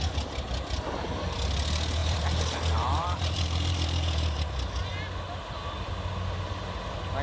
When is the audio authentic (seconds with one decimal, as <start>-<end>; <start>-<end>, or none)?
0.0-2.0; 4.4-7.2